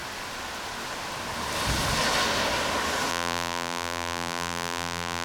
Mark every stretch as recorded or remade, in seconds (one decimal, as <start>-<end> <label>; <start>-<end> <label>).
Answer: 0.0-3.1 recorded; 3.1-5.2 remade